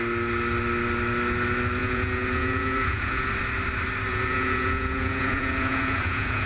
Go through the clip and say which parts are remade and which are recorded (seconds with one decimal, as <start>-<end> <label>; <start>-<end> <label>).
0.0-1.8 recorded; 1.8-3.3 remade; 3.3-4.1 recorded; 4.1-6.5 remade